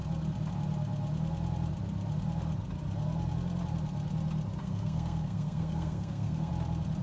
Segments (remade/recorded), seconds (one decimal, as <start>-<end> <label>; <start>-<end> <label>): 0.0-4.6 recorded; 4.6-6.5 remade; 6.5-7.0 recorded